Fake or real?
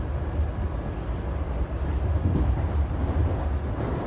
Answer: real